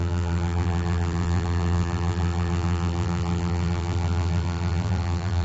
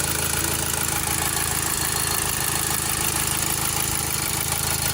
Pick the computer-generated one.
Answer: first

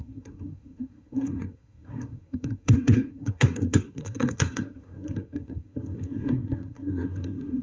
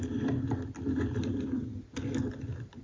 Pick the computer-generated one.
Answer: first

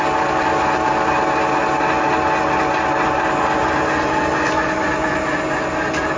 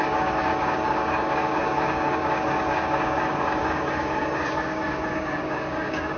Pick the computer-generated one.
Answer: second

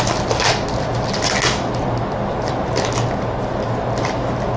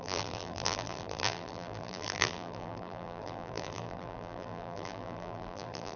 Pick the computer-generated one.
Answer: second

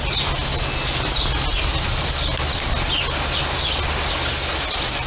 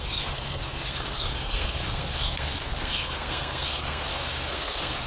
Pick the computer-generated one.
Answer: second